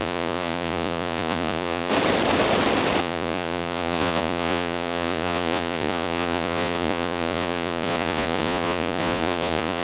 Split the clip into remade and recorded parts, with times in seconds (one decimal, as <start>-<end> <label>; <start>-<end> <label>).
0.0-1.9 remade; 1.9-3.0 recorded; 3.0-9.8 remade